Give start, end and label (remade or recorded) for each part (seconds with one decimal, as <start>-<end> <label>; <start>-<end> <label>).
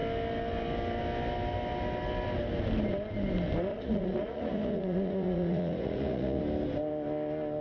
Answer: 0.0-3.7 recorded; 3.7-6.4 remade; 6.4-7.6 recorded